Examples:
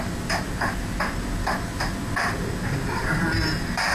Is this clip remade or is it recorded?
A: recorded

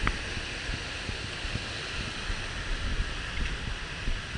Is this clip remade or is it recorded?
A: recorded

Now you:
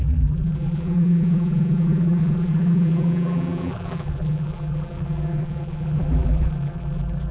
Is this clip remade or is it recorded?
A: remade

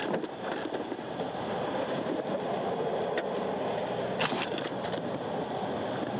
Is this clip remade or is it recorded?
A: recorded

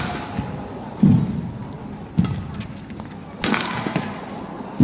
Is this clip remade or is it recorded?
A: recorded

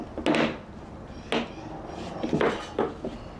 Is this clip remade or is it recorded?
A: recorded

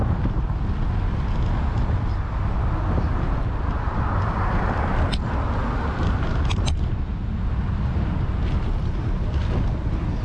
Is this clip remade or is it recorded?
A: recorded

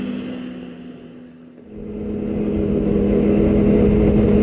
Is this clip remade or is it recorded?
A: recorded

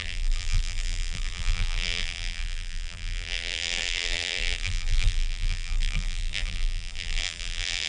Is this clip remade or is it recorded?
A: remade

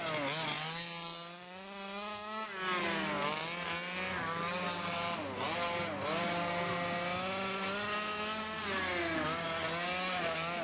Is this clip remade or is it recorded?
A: recorded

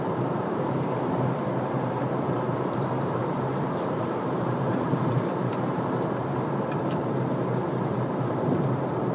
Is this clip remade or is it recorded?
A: remade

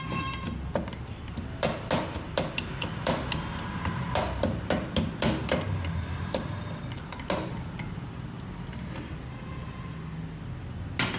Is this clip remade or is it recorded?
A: recorded